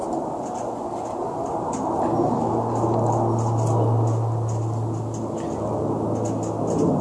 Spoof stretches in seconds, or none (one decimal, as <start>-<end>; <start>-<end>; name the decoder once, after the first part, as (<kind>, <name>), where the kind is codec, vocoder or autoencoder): none